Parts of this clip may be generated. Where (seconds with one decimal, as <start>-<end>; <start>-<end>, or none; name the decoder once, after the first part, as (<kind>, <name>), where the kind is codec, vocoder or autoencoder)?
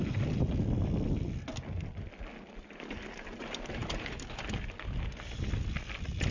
3.8-4.7 (vocoder, BigVGAN v2)